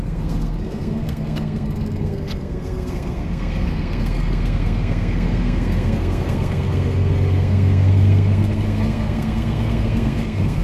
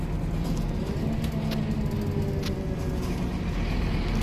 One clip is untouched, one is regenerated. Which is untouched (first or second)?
second